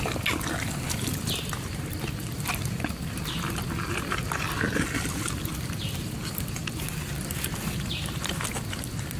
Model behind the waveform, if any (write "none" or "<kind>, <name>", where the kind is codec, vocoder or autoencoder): none